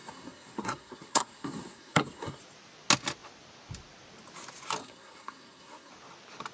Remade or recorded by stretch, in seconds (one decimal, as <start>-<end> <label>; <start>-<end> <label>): 0.0-2.4 remade; 2.4-4.8 recorded; 4.8-5.9 remade; 5.9-6.5 recorded